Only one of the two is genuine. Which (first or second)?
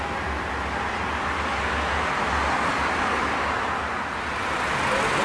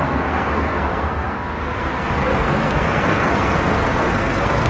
first